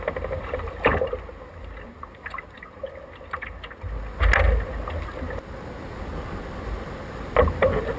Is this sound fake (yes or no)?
no